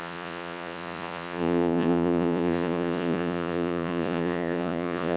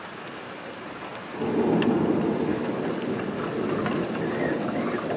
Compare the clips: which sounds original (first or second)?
second